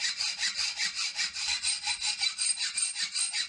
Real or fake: fake